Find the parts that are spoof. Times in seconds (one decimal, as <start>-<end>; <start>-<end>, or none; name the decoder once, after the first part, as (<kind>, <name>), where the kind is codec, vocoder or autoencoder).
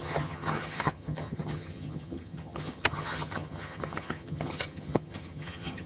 0.0-5.9 (vocoder, HiFi-GAN)